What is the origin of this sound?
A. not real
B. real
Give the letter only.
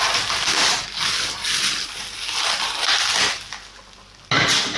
B